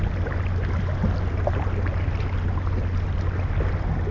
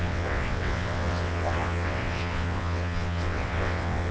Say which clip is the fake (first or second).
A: second